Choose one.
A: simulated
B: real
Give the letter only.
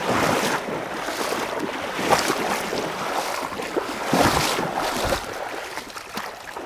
B